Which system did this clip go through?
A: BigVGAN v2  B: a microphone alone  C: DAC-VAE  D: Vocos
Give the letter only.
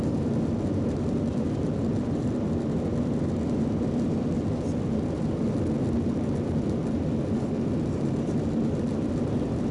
B